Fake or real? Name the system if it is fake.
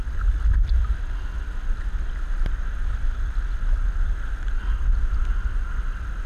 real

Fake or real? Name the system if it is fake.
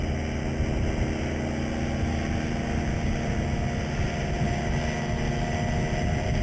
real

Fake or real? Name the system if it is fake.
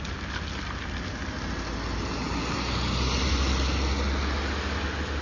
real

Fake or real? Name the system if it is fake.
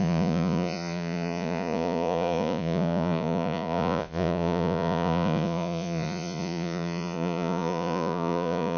fake, vocoder, Vocos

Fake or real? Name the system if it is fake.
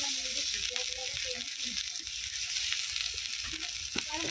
real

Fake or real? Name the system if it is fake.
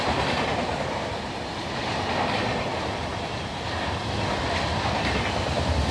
fake, vocoder, BigVGAN v2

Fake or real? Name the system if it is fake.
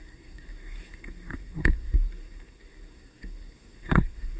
fake, codec, SNAC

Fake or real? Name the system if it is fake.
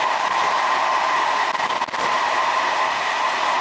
real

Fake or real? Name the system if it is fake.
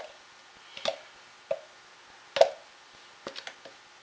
real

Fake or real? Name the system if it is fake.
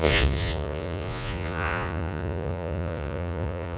fake, vocoder, Vocos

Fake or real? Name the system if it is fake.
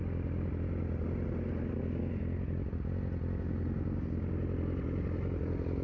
real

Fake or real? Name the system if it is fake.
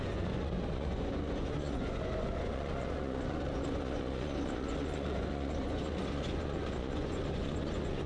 fake, vocoder, Vocos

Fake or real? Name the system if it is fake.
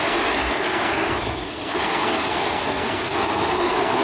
fake, codec, SNAC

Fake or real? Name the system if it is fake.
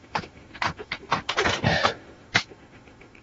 fake, autoencoder, DAC-VAE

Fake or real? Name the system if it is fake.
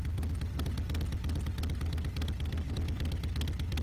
real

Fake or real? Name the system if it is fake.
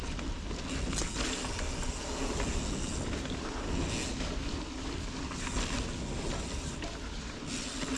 real